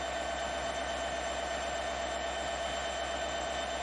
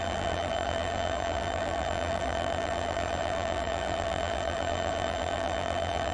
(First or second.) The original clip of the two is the first